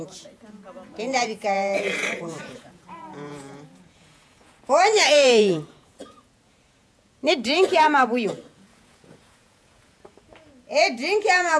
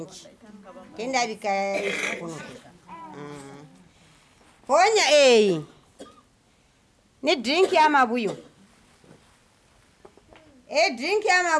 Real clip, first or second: second